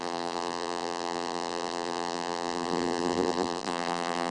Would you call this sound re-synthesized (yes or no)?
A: yes